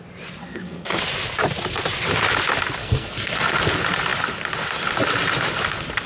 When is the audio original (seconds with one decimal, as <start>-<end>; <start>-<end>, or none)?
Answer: 0.0-0.4; 1.0-2.8; 3.6-6.1

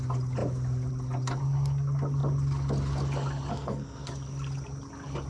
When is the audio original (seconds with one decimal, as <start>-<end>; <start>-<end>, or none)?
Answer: 0.0-3.5; 4.1-5.3

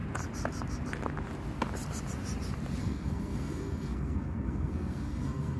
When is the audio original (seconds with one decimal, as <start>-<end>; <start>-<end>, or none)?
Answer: 0.0-2.8

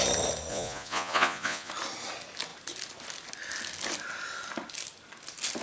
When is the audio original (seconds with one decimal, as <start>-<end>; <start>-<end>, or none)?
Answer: 0.0-0.5; 1.7-5.6

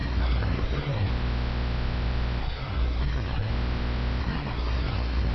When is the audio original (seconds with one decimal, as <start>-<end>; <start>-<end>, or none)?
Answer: 1.1-2.4; 3.5-4.2

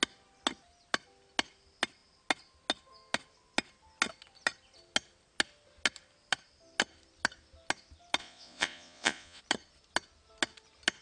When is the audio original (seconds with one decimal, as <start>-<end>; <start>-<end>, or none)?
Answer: 0.0-8.2; 9.4-11.0